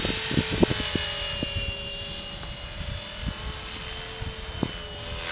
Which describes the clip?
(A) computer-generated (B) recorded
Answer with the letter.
B